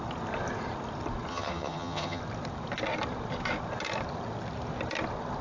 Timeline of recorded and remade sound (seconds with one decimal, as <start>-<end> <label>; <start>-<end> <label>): 0.0-1.3 recorded; 1.3-2.2 remade; 2.2-5.4 recorded